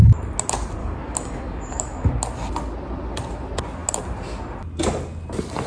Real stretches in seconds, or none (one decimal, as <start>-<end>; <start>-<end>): 0.0-0.8; 2.1-5.7